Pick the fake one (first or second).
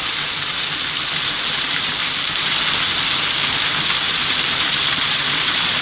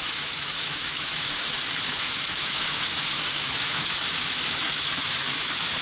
second